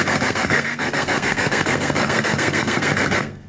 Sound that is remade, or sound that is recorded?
remade